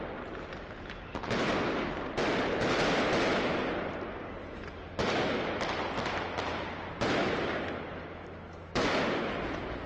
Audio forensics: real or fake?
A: real